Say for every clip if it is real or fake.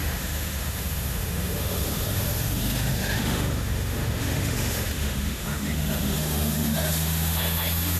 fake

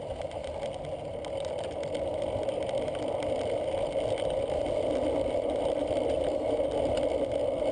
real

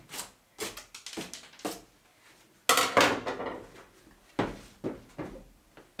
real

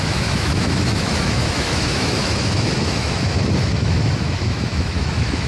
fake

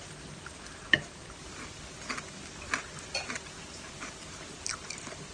real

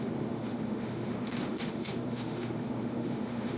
fake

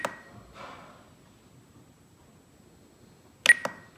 real